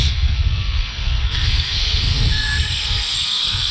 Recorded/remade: remade